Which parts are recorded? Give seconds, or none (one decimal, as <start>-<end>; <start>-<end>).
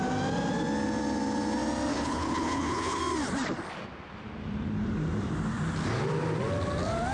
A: 0.0-1.9; 3.0-7.1